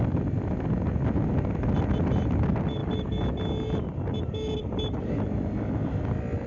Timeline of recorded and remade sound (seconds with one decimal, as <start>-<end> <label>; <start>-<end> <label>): 0.0-6.5 recorded